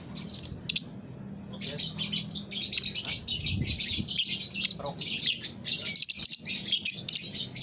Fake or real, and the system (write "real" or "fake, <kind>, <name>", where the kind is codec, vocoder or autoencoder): real